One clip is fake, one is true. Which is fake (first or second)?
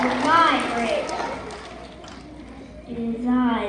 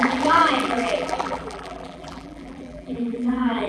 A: second